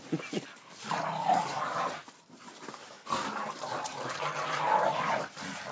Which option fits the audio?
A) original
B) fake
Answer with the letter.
A